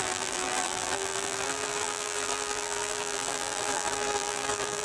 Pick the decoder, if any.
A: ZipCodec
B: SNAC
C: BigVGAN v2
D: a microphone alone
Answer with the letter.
C